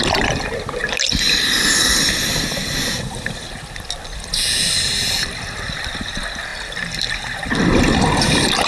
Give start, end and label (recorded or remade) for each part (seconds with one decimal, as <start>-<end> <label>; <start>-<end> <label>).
0.0-8.7 recorded